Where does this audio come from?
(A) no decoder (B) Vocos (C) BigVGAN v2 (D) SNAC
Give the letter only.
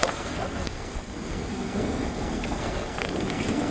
D